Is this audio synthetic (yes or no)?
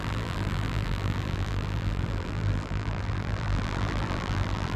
yes